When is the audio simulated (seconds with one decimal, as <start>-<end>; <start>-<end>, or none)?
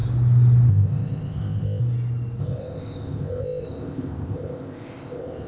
0.7-1.8; 2.4-5.5